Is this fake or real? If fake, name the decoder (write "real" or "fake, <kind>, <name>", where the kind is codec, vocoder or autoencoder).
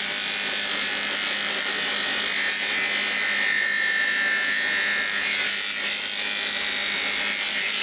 real